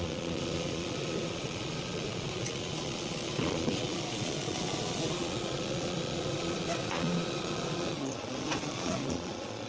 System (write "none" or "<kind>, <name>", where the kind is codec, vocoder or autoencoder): vocoder, Vocos